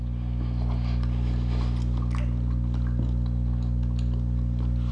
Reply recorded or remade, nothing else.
recorded